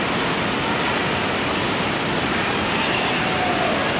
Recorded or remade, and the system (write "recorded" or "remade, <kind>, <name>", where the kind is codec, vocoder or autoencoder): recorded